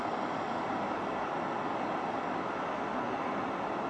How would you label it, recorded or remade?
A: recorded